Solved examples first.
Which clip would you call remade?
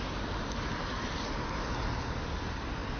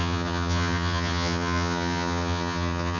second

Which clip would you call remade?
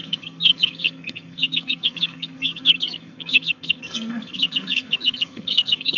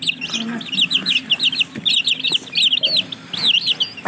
first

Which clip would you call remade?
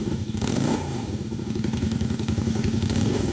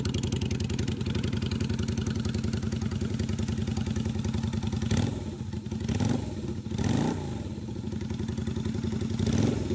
first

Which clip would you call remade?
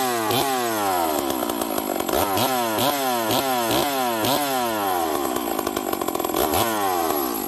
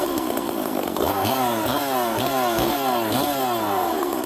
second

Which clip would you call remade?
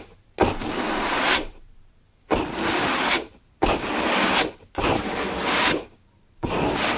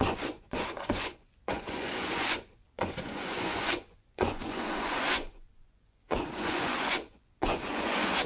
second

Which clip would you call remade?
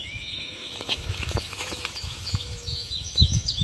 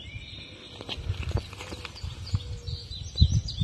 first